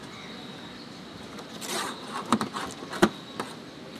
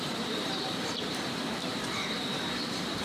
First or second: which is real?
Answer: first